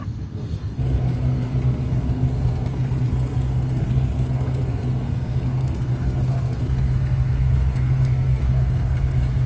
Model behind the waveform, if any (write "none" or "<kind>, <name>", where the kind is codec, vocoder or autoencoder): codec, SNAC